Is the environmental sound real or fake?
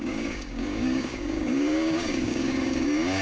fake